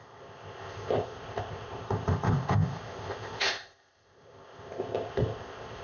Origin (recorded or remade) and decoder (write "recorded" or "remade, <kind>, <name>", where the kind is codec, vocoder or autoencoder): remade, codec, ZipCodec